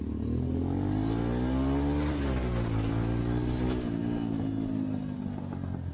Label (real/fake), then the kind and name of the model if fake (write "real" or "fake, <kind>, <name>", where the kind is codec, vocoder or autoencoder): real